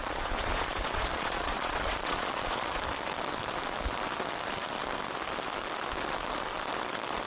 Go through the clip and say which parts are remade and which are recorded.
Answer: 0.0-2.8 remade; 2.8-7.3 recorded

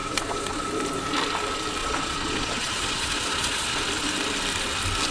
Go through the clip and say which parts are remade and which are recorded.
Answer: 0.0-0.6 remade; 0.6-1.8 recorded; 1.8-3.8 remade; 3.8-5.1 recorded